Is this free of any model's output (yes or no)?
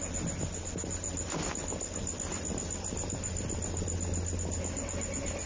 yes